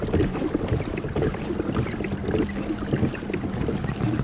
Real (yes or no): yes